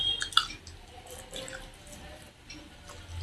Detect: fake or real real